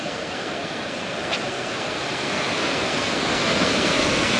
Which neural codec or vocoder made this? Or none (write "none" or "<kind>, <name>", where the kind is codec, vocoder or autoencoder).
codec, SNAC